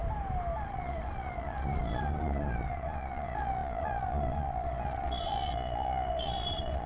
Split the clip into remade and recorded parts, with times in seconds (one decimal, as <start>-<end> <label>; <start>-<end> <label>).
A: 0.0-0.6 recorded; 0.6-6.9 remade